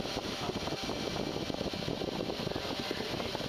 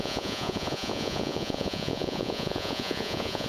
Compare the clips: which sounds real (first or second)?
first